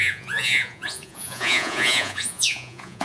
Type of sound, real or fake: fake